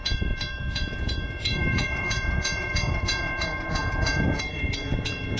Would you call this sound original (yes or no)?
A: no